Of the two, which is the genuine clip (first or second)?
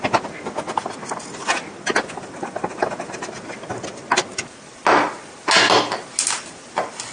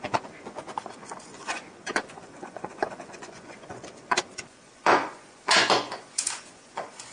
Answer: first